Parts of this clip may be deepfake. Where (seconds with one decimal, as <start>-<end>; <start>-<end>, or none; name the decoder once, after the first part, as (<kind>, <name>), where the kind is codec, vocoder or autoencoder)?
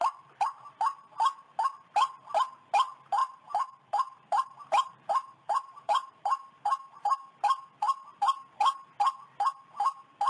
3.2-6.1 (vocoder, BigVGAN v2)